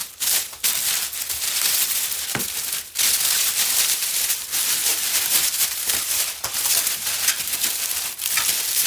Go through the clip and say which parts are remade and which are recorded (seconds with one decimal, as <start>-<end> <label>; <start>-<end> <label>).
0.0-0.6 remade; 0.6-4.8 recorded; 4.8-6.2 remade; 6.2-8.9 recorded